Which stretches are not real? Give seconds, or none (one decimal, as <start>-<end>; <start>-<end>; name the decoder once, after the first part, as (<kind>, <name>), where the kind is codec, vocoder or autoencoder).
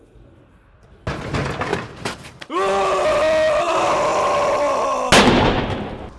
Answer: 1.7-2.4 (vocoder, BigVGAN v2)